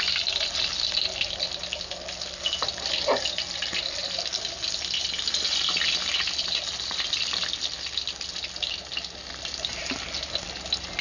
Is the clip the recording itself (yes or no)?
yes